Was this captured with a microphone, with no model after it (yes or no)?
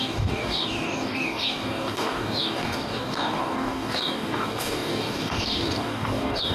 no